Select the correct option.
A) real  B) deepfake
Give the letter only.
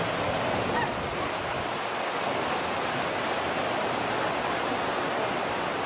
A